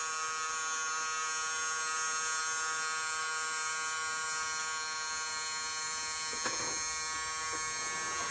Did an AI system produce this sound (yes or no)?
no